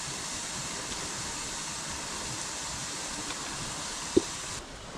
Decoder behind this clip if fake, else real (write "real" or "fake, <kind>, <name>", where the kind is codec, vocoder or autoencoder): real